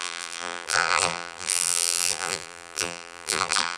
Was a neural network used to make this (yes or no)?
yes